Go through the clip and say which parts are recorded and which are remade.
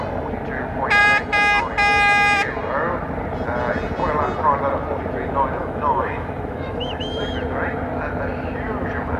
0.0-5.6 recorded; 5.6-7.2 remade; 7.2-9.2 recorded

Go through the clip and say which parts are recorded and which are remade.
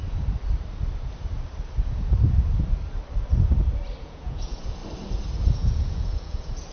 0.0-4.0 recorded; 4.0-4.8 remade; 4.8-5.5 recorded; 5.5-6.7 remade